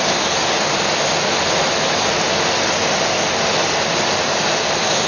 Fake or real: real